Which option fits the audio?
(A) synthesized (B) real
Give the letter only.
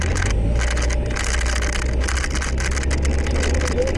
B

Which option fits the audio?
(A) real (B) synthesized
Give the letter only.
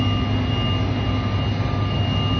A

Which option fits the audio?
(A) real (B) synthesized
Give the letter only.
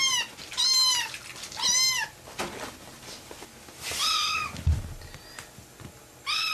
A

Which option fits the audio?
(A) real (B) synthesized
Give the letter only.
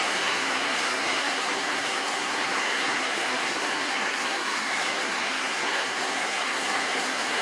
B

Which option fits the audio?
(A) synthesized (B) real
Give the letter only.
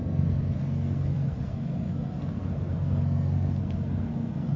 A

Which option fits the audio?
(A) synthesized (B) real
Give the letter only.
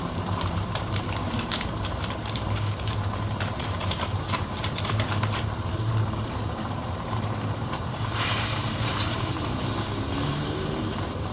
A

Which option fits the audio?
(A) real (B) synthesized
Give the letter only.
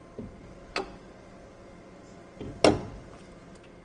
A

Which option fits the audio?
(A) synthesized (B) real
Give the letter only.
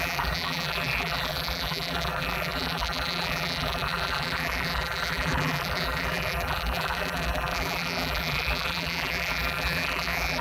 A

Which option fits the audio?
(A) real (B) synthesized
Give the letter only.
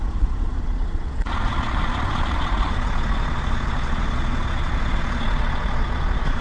B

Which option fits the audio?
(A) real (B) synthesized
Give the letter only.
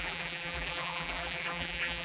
B